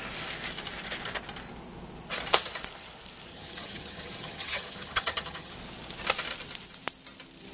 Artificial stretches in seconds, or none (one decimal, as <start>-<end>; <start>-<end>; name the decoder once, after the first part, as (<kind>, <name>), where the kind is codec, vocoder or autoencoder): 3.3-5.5 (vocoder, HiFi-GAN)